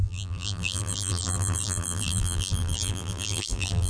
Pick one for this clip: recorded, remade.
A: remade